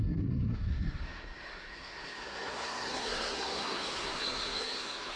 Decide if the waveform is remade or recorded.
remade